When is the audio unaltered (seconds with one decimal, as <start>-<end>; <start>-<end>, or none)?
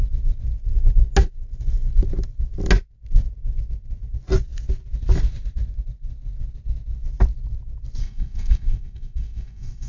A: 0.0-8.0